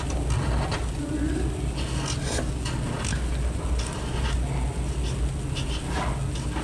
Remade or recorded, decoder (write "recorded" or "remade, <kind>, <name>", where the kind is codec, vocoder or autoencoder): recorded